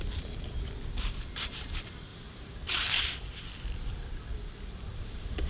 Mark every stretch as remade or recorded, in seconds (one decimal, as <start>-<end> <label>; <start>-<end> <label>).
0.0-2.1 recorded; 2.1-3.4 remade; 3.4-4.9 recorded; 4.9-5.5 remade